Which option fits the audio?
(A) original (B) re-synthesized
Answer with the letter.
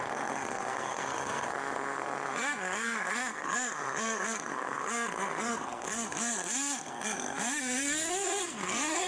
B